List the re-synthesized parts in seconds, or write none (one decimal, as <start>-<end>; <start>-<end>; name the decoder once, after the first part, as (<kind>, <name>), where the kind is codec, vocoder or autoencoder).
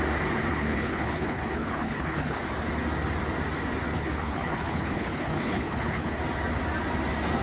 0.5-2.4 (codec, HILCodec); 3.9-6.2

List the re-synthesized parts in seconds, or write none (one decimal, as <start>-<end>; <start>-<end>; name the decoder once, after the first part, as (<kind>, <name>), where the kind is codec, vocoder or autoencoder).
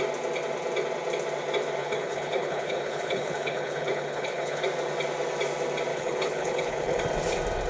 1.8-4.6 (codec, HILCodec); 5.9-7.0